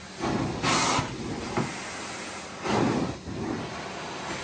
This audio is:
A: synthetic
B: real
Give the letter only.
B